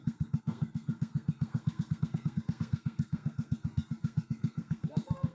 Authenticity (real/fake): fake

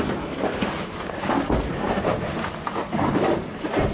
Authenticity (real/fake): real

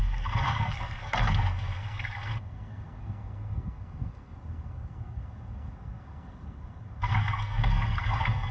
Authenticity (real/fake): fake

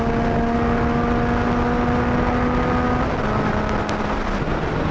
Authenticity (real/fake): real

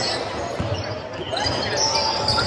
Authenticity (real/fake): real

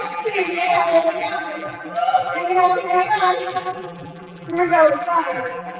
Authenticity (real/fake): fake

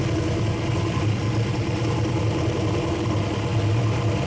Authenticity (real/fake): real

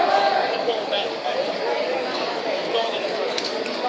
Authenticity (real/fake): fake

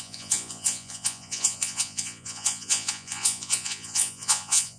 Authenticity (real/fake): fake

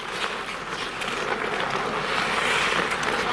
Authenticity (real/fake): real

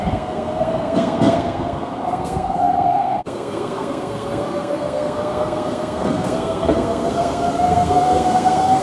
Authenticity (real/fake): fake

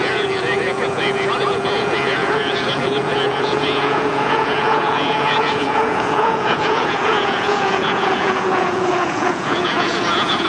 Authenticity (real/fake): fake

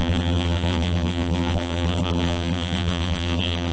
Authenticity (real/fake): fake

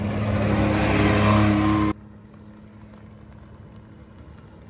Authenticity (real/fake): real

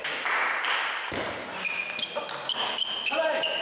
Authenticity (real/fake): real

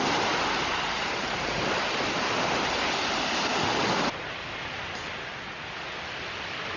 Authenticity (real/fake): real